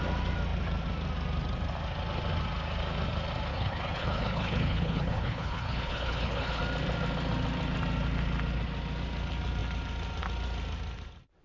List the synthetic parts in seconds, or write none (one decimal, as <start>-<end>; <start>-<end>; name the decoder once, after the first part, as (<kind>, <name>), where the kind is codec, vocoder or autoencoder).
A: 3.5-6.6 (codec, HILCodec)